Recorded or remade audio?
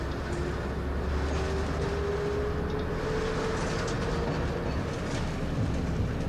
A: recorded